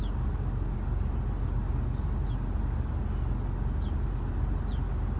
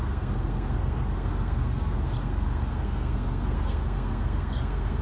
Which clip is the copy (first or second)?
second